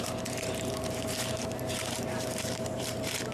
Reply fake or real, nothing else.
fake